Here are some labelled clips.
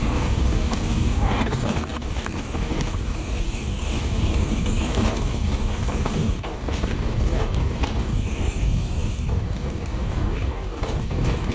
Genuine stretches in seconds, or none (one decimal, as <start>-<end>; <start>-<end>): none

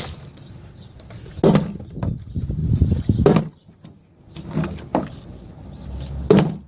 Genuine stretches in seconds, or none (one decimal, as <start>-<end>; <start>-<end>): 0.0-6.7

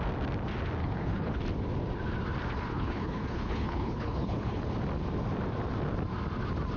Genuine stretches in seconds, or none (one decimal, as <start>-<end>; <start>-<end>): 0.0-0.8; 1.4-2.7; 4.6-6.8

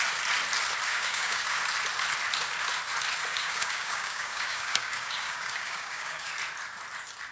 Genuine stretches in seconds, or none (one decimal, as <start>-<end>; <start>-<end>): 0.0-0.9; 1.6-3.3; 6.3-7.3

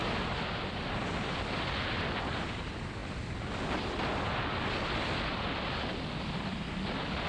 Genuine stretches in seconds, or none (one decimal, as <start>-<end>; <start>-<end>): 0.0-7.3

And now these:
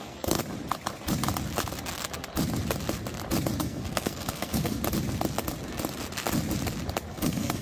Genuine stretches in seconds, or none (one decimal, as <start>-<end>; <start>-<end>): 0.4-3.6; 4.8-7.1

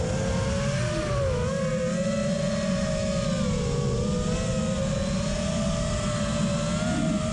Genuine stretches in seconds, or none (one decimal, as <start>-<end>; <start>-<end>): 0.0-7.3

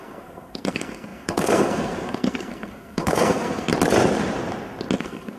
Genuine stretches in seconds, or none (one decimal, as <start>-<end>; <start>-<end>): 3.7-5.0